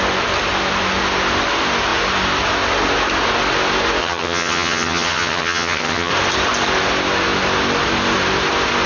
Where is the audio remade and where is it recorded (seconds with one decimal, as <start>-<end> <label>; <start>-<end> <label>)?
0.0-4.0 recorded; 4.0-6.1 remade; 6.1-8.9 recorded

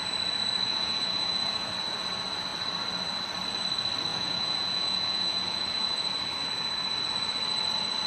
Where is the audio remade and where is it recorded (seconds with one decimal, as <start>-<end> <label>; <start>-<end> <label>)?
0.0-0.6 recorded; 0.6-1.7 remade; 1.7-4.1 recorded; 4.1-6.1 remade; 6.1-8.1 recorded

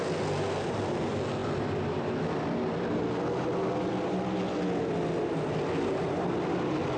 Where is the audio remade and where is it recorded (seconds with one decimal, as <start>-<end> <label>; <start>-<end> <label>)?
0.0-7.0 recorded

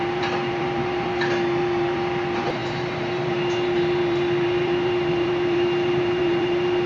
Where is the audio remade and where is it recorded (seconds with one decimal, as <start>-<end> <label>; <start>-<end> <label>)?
0.0-6.9 remade